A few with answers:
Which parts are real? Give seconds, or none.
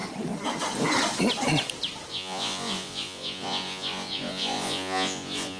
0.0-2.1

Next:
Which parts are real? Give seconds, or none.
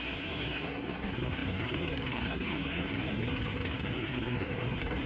none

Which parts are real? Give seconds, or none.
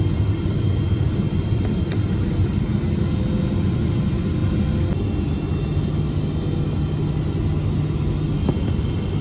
0.0-9.2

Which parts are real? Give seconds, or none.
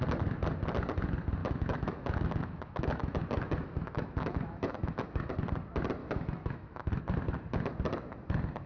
0.0-1.4; 5.3-6.0; 7.0-8.7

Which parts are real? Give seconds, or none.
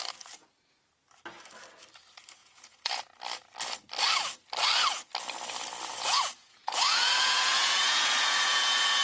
0.0-2.4; 3.0-5.9